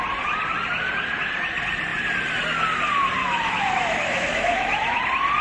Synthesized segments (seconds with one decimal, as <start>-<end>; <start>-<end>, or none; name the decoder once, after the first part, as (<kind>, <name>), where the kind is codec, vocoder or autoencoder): 3.2-5.0 (autoencoder, DAC-VAE)